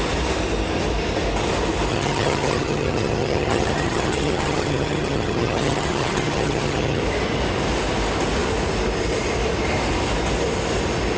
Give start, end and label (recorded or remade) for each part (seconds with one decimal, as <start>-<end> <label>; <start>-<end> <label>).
0.0-1.9 recorded; 1.9-7.0 remade; 7.0-11.2 recorded

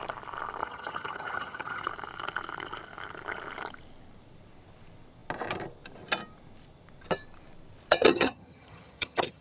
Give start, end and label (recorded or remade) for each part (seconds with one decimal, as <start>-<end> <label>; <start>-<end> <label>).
0.0-0.6 recorded; 0.6-1.9 remade; 1.9-7.9 recorded; 7.9-9.4 remade

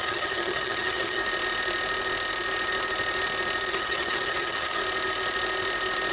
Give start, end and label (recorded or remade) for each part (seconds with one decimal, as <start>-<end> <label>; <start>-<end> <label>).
0.0-1.2 remade; 1.2-3.7 recorded; 3.7-4.8 remade; 4.8-6.1 recorded